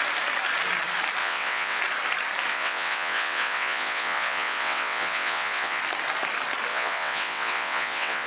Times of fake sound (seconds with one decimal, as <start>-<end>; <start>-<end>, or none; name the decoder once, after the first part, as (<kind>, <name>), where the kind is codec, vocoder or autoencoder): 1.2-1.8 (vocoder, WaveNeXt); 2.5-5.8; 6.7-8.3